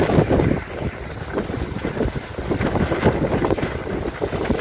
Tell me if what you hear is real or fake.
real